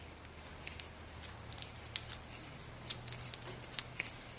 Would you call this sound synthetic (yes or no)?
no